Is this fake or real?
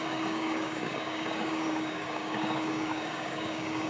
fake